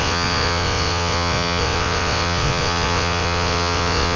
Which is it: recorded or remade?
remade